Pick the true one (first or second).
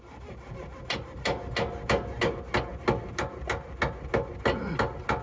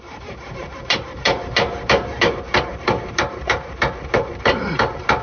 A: first